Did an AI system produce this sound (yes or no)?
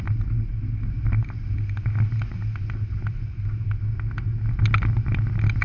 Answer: no